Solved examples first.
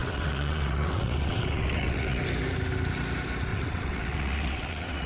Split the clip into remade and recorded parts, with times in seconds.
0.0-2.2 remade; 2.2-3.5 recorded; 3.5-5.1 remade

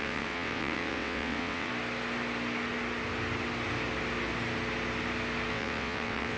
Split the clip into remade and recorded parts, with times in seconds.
0.0-1.7 remade; 1.7-5.5 recorded; 5.5-6.4 remade

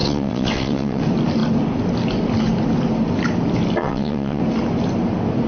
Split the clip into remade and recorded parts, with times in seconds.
0.0-1.0 remade; 1.0-3.8 recorded; 3.8-4.4 remade; 4.4-5.5 recorded

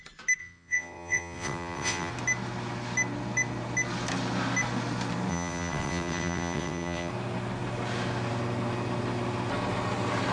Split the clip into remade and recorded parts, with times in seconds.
0.0-0.4 recorded; 0.4-2.1 remade; 2.1-5.3 recorded; 5.3-7.1 remade; 7.1-10.3 recorded